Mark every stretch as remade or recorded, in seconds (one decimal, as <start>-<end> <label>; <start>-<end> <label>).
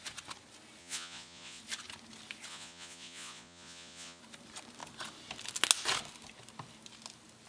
0.0-0.8 recorded; 0.8-1.6 remade; 1.6-2.5 recorded; 2.5-4.2 remade; 4.2-7.5 recorded